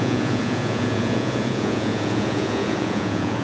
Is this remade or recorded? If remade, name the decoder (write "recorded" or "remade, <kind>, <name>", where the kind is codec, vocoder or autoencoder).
remade, vocoder, Vocos